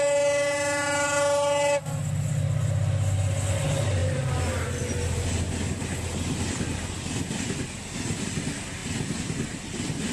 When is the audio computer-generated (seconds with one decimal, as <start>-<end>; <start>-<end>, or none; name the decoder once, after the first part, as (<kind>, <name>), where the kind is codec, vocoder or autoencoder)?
none

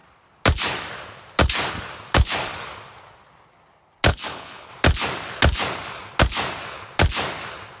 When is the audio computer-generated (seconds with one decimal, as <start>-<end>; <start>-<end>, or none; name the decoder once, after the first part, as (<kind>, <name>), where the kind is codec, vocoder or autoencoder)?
4.1-4.7 (codec, HILCodec)

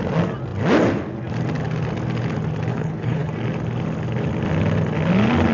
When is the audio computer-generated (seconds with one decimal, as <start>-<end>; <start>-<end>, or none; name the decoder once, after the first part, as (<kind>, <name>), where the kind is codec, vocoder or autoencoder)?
2.7-3.3 (codec, HILCodec)

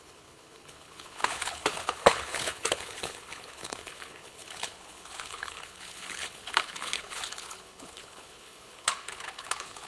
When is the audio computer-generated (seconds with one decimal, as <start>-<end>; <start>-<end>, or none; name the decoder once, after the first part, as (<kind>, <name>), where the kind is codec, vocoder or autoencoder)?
0.0-9.9 (codec, HILCodec)

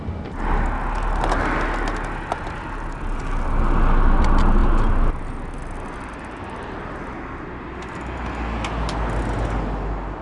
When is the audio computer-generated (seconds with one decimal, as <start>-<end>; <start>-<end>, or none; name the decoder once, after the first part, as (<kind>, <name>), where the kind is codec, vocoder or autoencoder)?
none

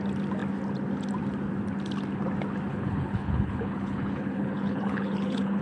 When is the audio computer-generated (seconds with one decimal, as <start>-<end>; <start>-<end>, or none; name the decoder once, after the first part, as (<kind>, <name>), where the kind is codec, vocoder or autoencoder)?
2.7-5.6 (codec, HILCodec)

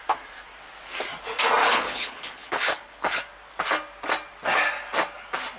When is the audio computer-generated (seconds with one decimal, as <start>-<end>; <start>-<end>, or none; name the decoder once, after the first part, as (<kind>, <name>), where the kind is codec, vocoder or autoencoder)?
1.6-3.2 (codec, HILCodec)

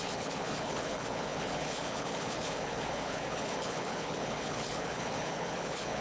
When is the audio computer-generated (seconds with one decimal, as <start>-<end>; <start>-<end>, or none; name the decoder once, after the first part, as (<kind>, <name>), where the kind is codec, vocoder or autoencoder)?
0.0-6.0 (codec, HILCodec)